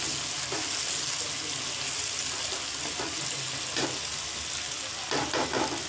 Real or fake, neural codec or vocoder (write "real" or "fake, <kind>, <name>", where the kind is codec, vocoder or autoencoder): real